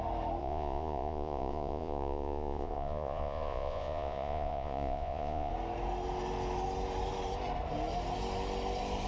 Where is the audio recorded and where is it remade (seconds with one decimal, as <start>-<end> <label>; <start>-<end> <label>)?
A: 0.0-0.4 recorded; 0.4-5.5 remade; 5.5-9.1 recorded